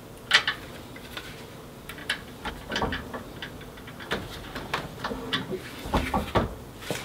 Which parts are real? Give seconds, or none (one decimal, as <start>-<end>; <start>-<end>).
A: 0.0-2.0; 2.5-2.9; 5.1-7.0

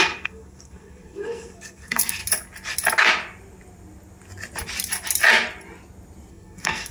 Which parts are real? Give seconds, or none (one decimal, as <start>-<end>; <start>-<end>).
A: 2.2-6.3

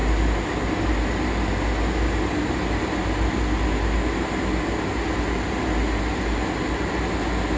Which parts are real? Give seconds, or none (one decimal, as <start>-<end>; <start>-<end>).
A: 0.0-7.6

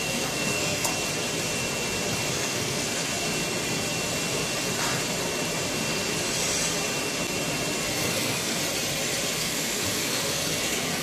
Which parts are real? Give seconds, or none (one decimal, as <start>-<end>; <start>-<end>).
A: 0.9-2.3; 3.1-8.0; 8.6-9.4

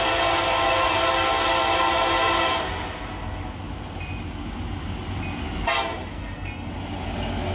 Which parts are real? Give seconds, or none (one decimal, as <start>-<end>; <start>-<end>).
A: 0.0-6.1; 6.7-7.5

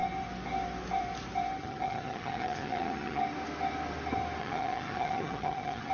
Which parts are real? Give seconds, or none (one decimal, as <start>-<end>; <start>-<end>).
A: 0.0-1.6; 3.2-4.4

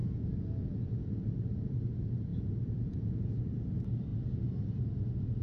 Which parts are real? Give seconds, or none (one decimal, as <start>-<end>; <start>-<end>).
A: 1.1-2.3; 3.4-5.4

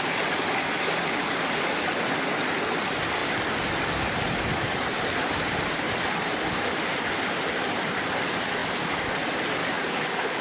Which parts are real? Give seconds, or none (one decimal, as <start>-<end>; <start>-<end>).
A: 0.0-9.6